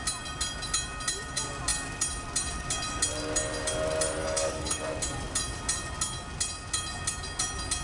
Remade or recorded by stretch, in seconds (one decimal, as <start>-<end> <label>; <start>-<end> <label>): 0.0-4.2 recorded; 4.2-4.8 remade; 4.8-7.8 recorded